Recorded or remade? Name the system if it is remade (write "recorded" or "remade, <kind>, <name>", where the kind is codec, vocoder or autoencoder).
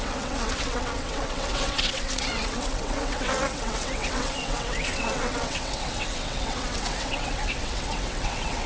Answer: remade, vocoder, WaveNeXt